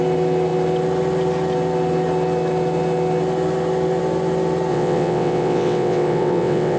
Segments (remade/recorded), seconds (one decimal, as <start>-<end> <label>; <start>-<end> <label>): 0.0-4.7 recorded; 4.7-6.8 remade